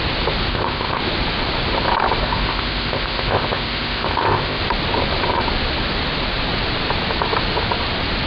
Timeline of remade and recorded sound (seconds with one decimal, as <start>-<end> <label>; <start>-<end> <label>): 0.0-0.5 recorded; 0.5-1.0 remade; 1.0-2.2 recorded; 2.2-4.6 remade; 4.6-8.3 recorded